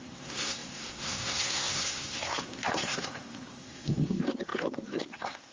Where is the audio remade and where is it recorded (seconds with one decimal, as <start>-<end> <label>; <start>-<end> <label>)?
0.0-5.5 remade